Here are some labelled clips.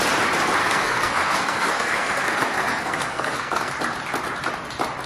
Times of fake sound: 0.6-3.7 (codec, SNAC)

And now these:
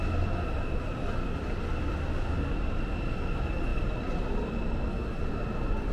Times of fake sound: none

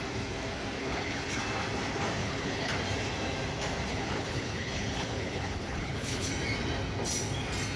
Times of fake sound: 0.8-1.4 (codec, HILCodec); 2.2-2.7; 3.9-6.3